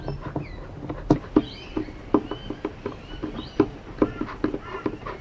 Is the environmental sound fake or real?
real